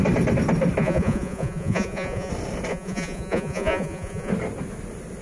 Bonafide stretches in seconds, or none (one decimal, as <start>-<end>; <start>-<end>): 0.0-0.8; 2.3-2.7; 4.3-5.2